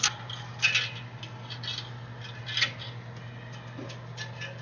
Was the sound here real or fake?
real